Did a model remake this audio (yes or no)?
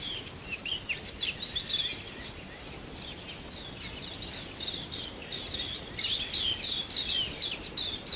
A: no